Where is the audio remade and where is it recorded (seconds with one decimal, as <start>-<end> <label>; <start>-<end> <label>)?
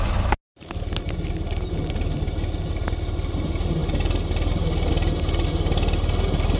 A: 0.0-6.6 recorded